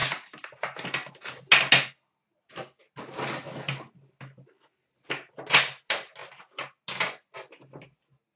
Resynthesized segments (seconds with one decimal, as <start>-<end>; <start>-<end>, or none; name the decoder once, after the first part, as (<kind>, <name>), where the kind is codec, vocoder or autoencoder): none